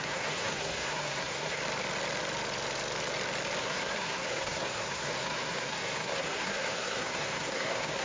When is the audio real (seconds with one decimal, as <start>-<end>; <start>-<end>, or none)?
1.6-3.6